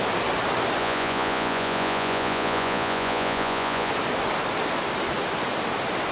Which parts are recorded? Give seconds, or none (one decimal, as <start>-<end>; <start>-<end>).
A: 0.0-0.8; 3.9-6.1